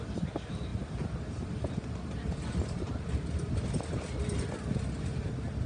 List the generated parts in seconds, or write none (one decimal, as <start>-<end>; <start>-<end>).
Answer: none